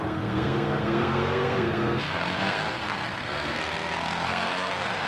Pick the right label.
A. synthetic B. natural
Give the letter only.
A